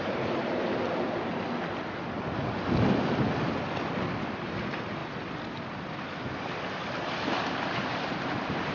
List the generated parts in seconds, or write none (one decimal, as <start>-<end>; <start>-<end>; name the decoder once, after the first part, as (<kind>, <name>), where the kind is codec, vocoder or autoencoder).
0.0-1.3 (vocoder, BigVGAN v2); 3.9-5.0; 6.6-8.7